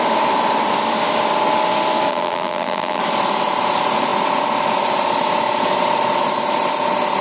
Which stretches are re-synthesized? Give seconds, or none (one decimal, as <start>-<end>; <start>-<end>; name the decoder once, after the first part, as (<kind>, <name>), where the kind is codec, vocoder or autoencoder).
2.1-3.0 (vocoder, BigVGAN v2)